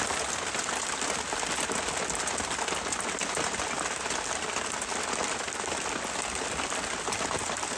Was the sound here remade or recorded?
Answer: recorded